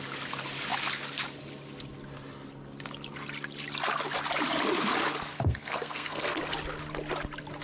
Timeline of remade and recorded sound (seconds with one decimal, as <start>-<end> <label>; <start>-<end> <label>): 0.0-5.3 recorded; 5.3-6.4 remade; 6.4-7.6 recorded